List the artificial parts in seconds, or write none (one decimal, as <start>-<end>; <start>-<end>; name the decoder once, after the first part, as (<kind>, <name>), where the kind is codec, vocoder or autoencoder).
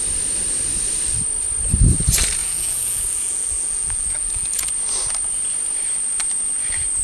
2.4-4.7 (vocoder, Vocos)